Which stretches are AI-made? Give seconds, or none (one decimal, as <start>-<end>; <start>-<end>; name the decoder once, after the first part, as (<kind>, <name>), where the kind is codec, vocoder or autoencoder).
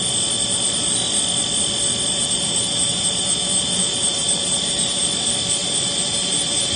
2.1-5.0 (vocoder, BigVGAN v2); 5.6-6.8